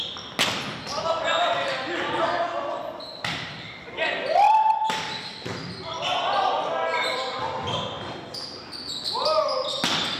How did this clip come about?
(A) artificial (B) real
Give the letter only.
B